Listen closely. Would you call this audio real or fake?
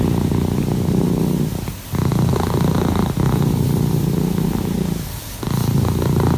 real